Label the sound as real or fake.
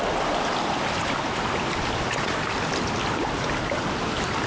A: real